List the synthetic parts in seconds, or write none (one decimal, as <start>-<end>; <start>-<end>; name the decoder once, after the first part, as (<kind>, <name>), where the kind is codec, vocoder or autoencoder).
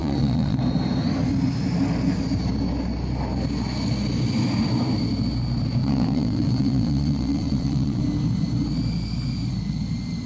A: 0.0-0.6 (vocoder, WaveNeXt); 5.8-8.0